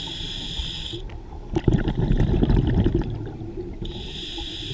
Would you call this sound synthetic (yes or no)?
no